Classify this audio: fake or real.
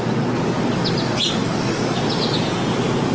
real